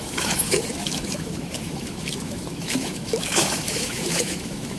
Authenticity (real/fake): fake